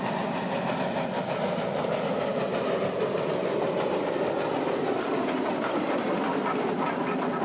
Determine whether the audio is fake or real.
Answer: real